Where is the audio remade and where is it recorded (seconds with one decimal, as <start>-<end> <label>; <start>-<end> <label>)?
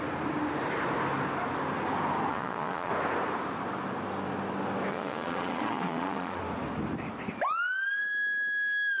0.0-2.3 recorded; 2.3-2.9 remade; 2.9-4.9 recorded; 4.9-6.4 remade; 6.4-9.0 recorded